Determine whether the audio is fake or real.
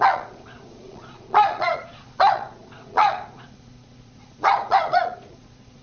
fake